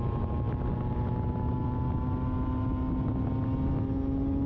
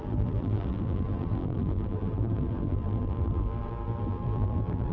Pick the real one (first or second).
first